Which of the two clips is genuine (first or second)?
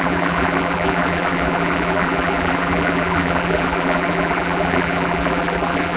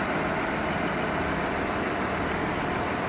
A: second